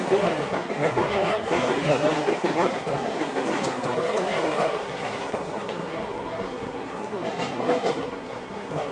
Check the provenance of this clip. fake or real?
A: fake